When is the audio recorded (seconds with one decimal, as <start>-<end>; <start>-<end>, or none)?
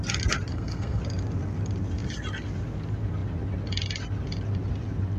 0.0-0.5; 1.0-5.2